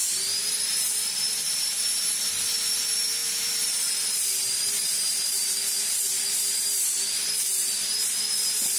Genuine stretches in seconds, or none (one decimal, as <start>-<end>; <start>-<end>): none